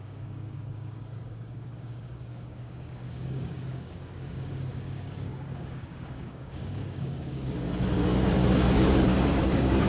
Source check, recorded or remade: remade